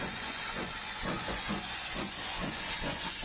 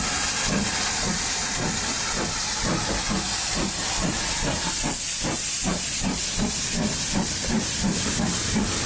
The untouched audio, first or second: second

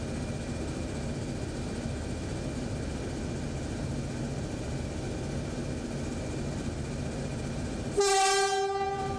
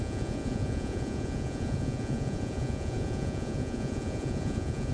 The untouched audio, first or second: first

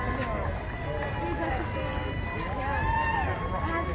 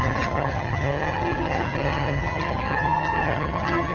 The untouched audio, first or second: first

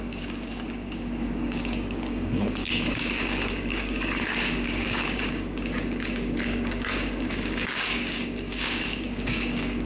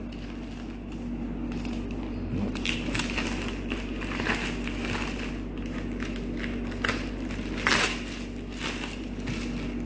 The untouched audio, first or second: second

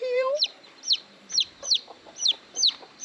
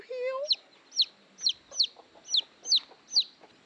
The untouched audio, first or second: second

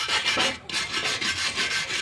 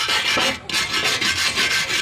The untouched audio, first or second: second